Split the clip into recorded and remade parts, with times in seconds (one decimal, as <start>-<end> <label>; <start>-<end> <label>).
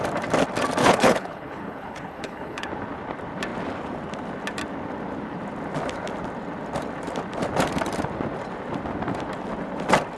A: 0.0-0.8 recorded; 0.8-2.7 remade; 2.7-10.2 recorded